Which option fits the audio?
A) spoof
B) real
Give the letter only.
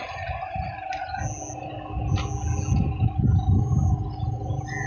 B